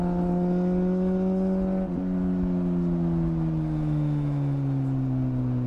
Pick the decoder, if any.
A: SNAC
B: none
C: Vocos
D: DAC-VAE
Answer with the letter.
B